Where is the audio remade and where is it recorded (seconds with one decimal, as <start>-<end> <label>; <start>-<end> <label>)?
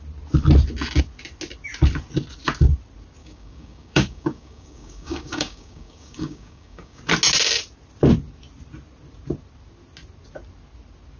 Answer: 0.0-3.2 recorded; 3.2-7.0 remade; 7.0-11.2 recorded